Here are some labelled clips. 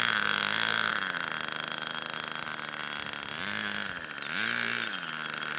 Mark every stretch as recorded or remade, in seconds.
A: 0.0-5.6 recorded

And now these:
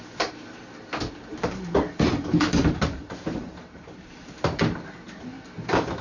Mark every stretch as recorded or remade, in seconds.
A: 0.0-1.3 recorded; 1.3-4.6 remade; 4.6-6.0 recorded

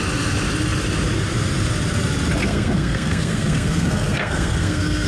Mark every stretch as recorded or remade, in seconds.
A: 0.0-2.4 recorded; 2.4-5.1 remade

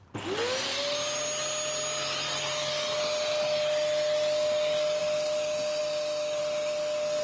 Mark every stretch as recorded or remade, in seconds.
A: 0.0-7.2 recorded

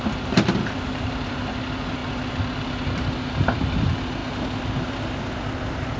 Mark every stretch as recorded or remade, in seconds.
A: 0.0-2.0 remade; 2.0-3.2 recorded; 3.2-4.2 remade; 4.2-5.2 recorded; 5.2-6.0 remade

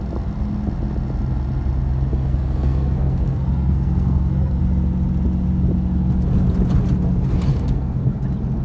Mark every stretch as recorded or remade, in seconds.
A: 0.0-2.1 recorded; 2.1-4.6 remade; 4.6-7.5 recorded; 7.5-8.2 remade; 8.2-8.6 recorded